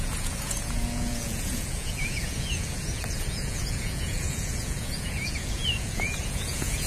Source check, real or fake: fake